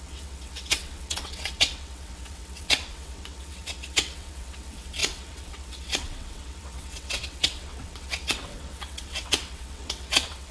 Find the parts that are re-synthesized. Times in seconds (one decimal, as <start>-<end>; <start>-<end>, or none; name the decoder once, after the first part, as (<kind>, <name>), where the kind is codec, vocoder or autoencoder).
0.0-10.5 (vocoder, WaveNeXt)